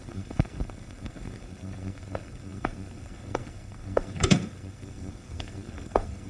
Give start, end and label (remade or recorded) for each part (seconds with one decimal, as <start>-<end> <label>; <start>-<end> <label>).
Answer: 0.0-6.3 remade